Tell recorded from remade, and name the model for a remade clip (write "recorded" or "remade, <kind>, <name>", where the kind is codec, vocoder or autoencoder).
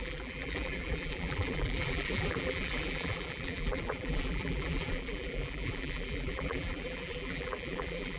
remade, vocoder, BigVGAN v2